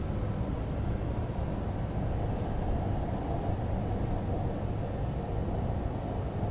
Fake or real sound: real